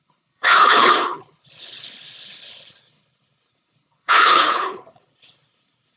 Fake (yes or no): yes